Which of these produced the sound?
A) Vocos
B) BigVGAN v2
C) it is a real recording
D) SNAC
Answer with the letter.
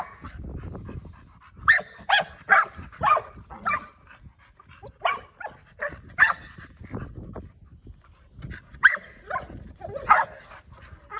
C